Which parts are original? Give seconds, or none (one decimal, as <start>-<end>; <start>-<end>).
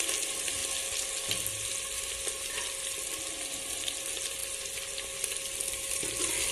0.0-6.5